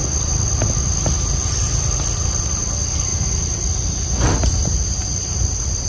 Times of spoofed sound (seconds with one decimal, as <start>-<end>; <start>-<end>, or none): none